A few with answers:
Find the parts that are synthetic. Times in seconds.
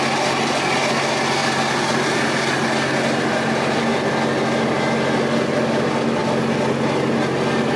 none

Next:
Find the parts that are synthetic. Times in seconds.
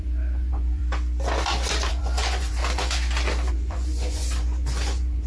0.0-0.8 (vocoder, Vocos); 1.9-2.6; 3.5-5.3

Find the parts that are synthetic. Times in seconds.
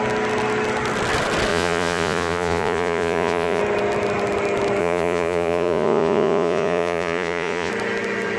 1.5-3.6 (vocoder, Vocos); 4.8-7.7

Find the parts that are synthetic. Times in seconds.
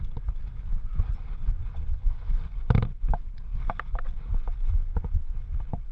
1.7-2.3 (vocoder, WaveNeXt); 4.8-5.5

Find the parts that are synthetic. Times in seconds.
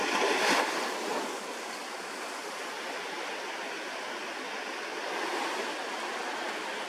none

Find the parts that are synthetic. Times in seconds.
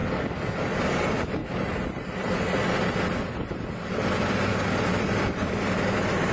none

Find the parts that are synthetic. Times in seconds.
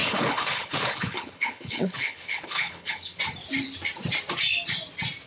0.0-3.2 (codec, HILCodec)